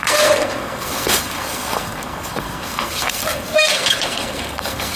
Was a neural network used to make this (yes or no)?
yes